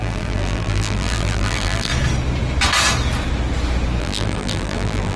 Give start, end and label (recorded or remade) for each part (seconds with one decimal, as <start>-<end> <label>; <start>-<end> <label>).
0.0-1.9 remade; 1.9-4.0 recorded; 4.0-5.2 remade